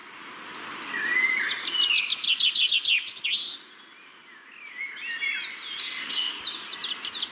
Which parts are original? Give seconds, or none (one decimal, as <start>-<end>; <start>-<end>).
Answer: 0.0-5.8; 6.4-7.3